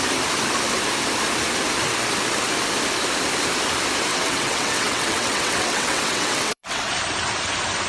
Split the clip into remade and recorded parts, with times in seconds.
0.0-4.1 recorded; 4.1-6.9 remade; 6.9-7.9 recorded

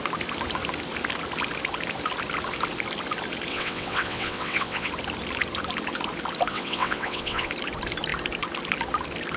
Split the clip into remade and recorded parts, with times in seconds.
0.0-3.5 recorded; 3.5-4.9 remade; 4.9-6.5 recorded; 6.5-7.5 remade; 7.5-9.4 recorded

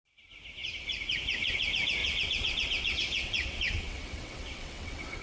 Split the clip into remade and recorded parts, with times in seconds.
0.0-2.0 recorded; 2.0-5.2 remade

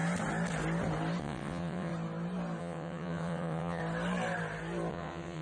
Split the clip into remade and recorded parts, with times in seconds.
0.0-1.2 recorded; 1.2-1.9 remade; 1.9-2.6 recorded; 2.6-3.8 remade; 3.8-4.9 recorded; 4.9-5.4 remade

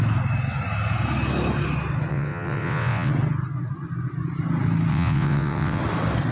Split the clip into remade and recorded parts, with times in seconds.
0.0-2.1 recorded; 2.1-3.1 remade; 3.1-4.9 recorded; 4.9-5.8 remade; 5.8-6.3 recorded